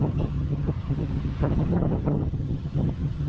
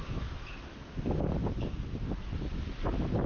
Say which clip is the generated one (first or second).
first